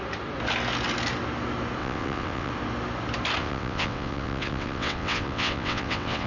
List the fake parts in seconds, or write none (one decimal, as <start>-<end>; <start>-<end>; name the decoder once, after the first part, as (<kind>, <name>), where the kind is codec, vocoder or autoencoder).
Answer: 1.8-2.5 (vocoder, WaveNeXt); 3.4-6.3